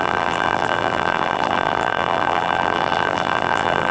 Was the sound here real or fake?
fake